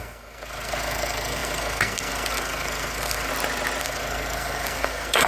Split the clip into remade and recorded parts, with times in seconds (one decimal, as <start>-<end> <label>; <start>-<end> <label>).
0.0-3.3 remade; 3.3-3.8 recorded; 3.8-5.3 remade